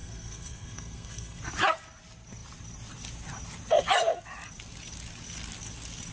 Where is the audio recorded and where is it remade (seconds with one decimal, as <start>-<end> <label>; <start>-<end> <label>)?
0.0-1.4 remade; 1.4-6.1 recorded